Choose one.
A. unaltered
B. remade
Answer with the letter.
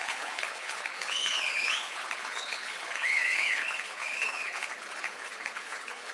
B